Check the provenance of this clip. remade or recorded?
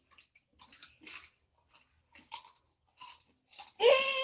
recorded